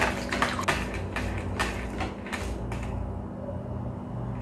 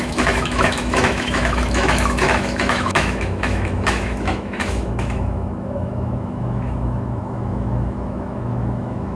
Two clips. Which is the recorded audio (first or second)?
first